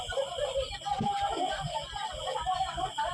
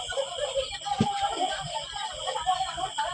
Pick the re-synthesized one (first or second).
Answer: second